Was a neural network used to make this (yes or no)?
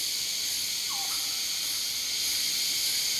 no